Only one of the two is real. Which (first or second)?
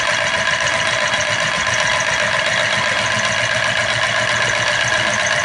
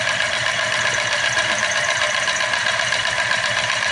first